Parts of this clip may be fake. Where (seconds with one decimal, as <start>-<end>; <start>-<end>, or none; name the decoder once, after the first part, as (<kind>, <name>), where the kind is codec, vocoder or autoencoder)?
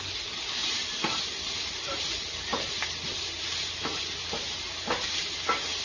none